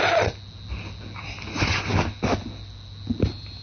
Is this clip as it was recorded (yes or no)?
yes